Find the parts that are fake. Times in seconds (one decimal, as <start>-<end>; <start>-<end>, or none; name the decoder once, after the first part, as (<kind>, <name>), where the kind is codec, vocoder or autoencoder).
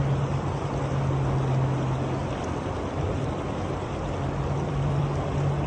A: 2.2-5.0 (vocoder, BigVGAN v2)